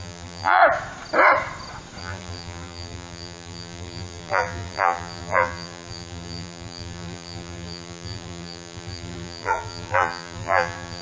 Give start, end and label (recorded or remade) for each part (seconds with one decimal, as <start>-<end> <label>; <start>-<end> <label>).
0.0-0.6 remade; 0.6-2.0 recorded; 2.0-11.0 remade